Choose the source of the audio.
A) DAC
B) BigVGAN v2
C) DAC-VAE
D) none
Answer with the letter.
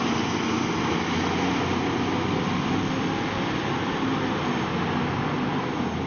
D